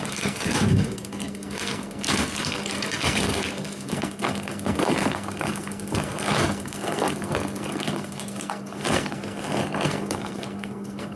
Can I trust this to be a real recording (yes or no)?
no